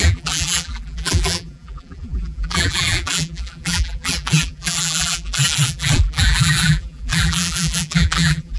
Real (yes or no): no